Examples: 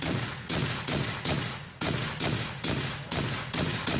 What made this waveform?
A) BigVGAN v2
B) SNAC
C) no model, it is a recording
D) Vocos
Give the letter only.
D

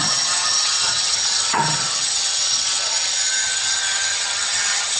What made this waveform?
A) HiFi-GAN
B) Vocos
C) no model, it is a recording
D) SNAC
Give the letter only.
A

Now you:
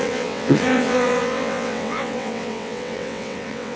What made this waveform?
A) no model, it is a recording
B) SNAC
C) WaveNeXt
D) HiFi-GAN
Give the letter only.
C